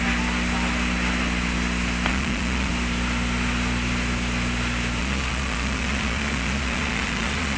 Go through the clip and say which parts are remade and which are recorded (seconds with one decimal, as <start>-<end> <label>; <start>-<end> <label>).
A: 0.0-2.1 recorded; 2.1-2.7 remade; 2.7-5.0 recorded; 5.0-7.6 remade